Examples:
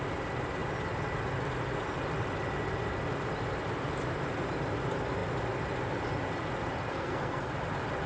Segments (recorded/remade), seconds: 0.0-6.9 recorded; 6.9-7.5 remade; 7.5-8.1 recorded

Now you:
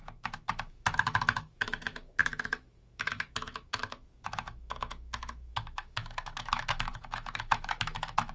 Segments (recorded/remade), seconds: 0.0-8.3 remade

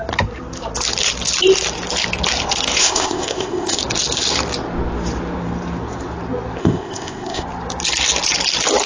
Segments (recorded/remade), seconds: 0.0-2.8 recorded; 2.8-3.8 remade; 3.8-6.6 recorded; 6.6-7.4 remade; 7.4-8.9 recorded